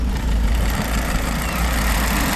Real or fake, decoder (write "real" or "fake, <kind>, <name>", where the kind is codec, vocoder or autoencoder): fake, vocoder, BigVGAN v2